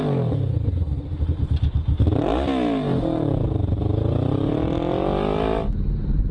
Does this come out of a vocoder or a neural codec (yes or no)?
no